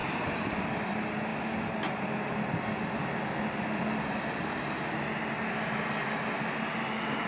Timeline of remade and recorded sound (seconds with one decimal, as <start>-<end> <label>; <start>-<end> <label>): 0.0-0.9 remade; 0.9-7.3 recorded